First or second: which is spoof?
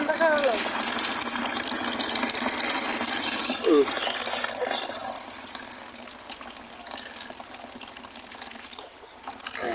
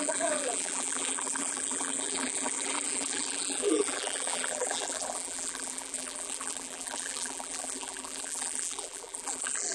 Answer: second